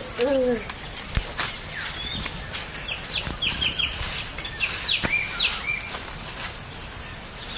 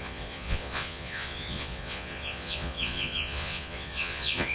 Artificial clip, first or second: second